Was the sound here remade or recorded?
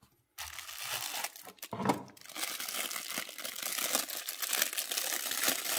recorded